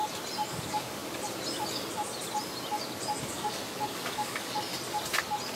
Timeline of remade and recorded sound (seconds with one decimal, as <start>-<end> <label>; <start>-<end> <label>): 0.0-0.5 recorded; 0.5-1.0 remade; 1.0-3.2 recorded; 3.2-4.7 remade; 4.7-5.6 recorded